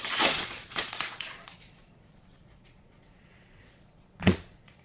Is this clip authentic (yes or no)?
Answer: no